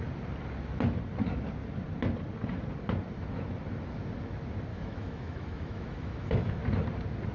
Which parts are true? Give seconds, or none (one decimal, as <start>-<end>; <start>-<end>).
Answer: 0.0-4.7; 6.6-7.3